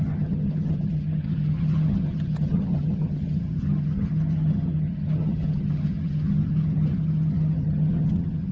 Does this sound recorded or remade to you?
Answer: remade